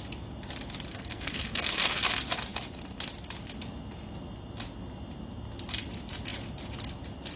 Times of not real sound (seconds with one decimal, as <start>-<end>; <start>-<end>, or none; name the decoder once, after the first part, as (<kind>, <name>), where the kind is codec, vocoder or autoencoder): 0.9-2.0 (codec, SNAC)